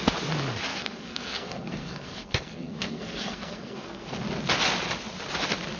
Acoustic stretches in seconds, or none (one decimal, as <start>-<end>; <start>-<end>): 0.0-0.7; 4.2-5.8